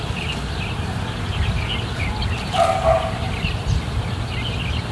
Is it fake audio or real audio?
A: real